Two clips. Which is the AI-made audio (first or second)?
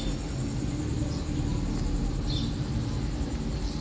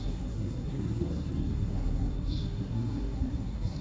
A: second